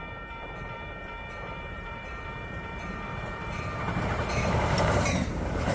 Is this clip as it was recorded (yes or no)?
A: no